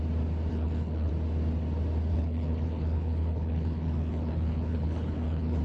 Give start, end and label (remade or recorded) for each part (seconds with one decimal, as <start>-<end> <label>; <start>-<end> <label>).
0.0-0.5 recorded; 0.5-1.1 remade; 1.1-2.1 recorded; 2.1-5.6 remade